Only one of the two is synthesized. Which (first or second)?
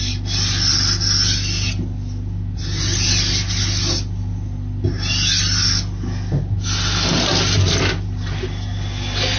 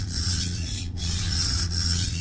second